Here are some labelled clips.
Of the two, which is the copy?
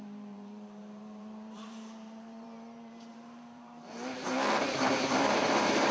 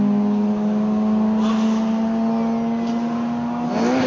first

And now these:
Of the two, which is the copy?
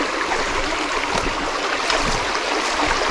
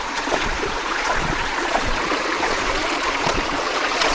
second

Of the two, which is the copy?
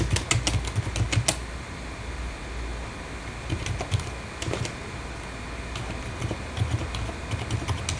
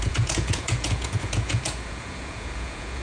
second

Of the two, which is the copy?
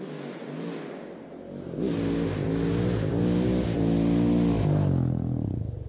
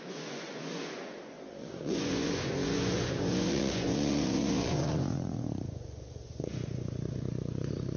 second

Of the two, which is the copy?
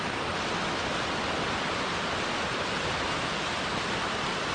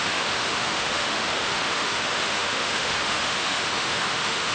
second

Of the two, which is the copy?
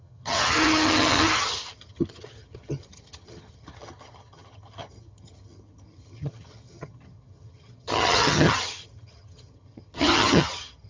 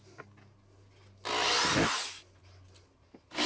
first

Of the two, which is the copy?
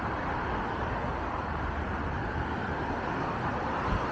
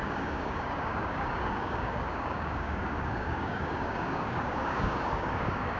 second